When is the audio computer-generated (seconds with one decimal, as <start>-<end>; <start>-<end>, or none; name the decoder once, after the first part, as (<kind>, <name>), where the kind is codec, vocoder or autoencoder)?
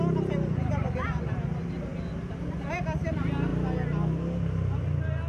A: none